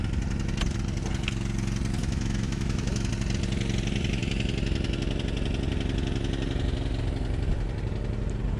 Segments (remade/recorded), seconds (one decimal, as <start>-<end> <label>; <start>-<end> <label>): 0.0-2.0 recorded; 2.0-3.1 remade; 3.1-8.6 recorded